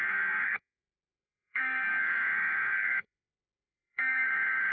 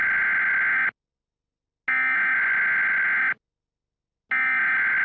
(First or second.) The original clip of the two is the second